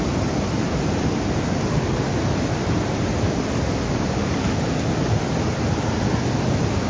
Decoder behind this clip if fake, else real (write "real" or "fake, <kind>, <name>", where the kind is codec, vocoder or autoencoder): real